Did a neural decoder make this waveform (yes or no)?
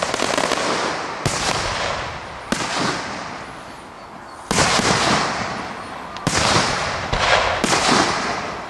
no